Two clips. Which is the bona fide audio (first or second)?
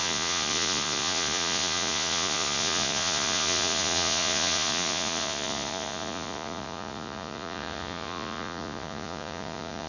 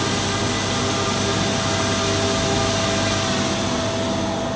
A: second